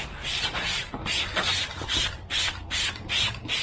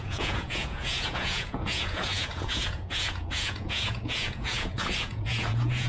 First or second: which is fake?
second